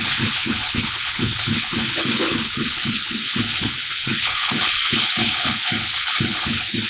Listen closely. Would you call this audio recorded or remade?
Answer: remade